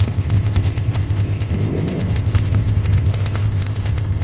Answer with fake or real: fake